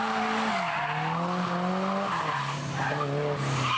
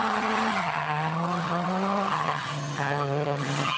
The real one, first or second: first